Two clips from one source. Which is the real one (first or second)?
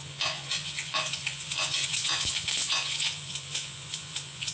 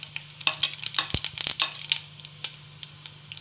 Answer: second